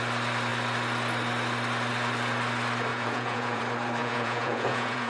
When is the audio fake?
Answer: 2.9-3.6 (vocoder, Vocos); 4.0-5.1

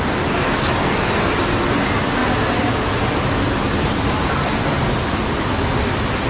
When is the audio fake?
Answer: 0.8-1.3 (codec, SNAC)

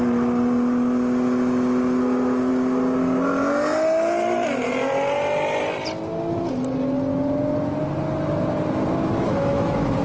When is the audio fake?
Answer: 9.3-10.0 (autoencoder, DAC-VAE)

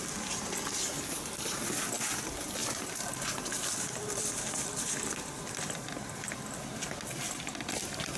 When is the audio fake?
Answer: none

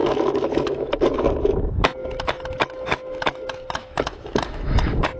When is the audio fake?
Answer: 0.0-1.2 (autoencoder, DAC-VAE); 2.0-5.2

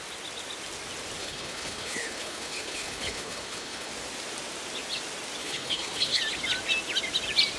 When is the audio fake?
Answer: 1.2-3.9 (codec, HILCodec); 5.4-6.2

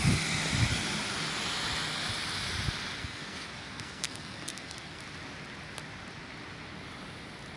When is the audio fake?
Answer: 3.0-5.0 (codec, SNAC)

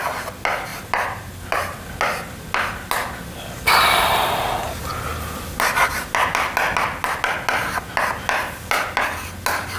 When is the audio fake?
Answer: none